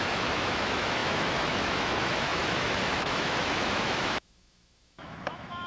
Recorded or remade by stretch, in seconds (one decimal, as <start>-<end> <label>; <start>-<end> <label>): 0.0-5.7 remade